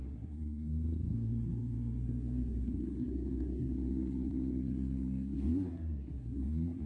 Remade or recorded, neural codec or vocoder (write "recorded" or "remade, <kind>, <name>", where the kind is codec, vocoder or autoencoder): remade, codec, SNAC